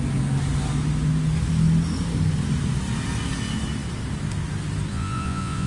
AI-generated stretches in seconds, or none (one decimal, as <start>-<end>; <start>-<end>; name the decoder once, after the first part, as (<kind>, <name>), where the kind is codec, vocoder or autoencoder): 4.9-5.7 (vocoder, Vocos)